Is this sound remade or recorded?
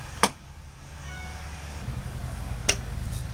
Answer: remade